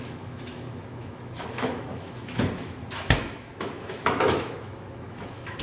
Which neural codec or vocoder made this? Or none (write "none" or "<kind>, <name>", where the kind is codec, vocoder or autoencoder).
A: autoencoder, DAC-VAE